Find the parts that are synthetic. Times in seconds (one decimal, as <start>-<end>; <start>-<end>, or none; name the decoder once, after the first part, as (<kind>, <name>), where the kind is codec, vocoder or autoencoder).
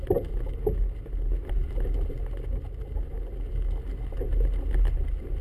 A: none